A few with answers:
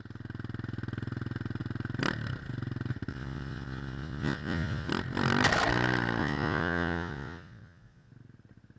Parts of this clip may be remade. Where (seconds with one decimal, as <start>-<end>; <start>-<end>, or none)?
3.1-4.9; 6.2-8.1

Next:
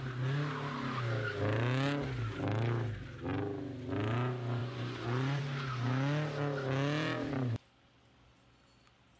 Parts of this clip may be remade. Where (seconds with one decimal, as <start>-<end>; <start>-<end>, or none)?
4.6-5.4

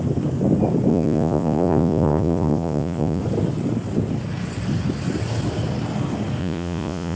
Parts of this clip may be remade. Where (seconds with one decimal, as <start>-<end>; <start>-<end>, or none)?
0.9-3.2; 6.4-7.2